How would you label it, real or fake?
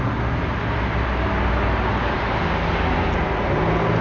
real